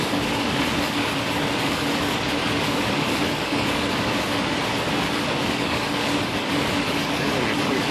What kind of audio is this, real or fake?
fake